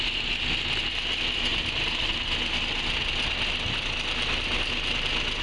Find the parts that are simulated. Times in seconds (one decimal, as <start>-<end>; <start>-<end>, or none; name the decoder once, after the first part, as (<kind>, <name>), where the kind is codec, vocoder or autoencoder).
none